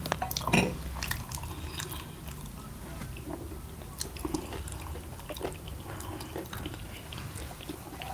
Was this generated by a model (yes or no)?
no